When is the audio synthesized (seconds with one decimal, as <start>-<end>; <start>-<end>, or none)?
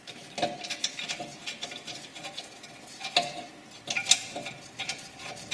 none